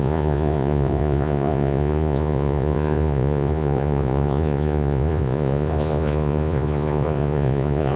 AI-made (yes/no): yes